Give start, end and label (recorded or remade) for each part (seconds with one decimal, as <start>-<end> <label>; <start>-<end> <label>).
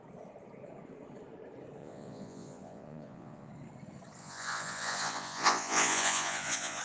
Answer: 0.0-1.8 recorded; 1.8-3.5 remade; 3.5-4.2 recorded; 4.2-6.8 remade